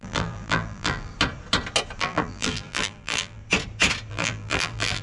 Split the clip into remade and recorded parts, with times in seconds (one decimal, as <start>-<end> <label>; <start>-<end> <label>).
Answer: 0.0-1.1 remade; 1.1-2.0 recorded; 2.0-3.4 remade; 3.4-4.1 recorded; 4.1-5.0 remade